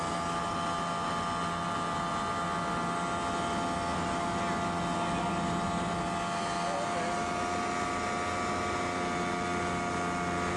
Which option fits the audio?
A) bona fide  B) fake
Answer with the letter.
A